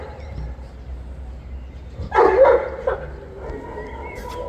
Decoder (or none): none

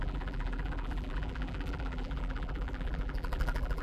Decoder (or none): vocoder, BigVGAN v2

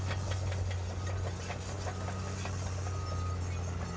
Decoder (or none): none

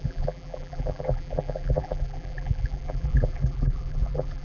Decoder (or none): vocoder, BigVGAN v2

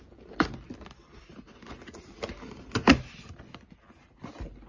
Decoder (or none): none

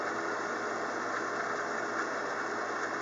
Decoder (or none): none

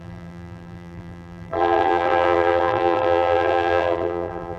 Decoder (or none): vocoder, BigVGAN v2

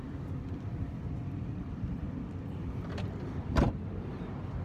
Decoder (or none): none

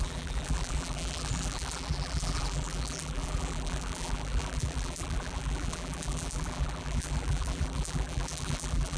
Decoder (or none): vocoder, BigVGAN v2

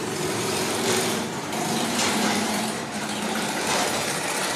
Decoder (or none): vocoder, BigVGAN v2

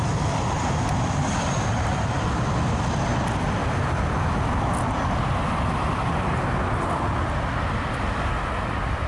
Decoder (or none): none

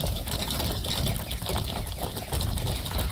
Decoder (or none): none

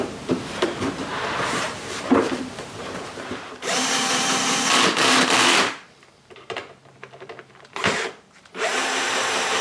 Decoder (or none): vocoder, BigVGAN v2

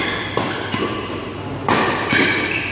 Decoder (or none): none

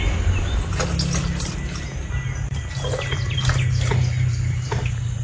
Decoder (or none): none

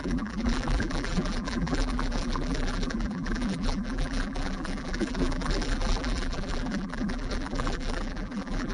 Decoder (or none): vocoder, BigVGAN v2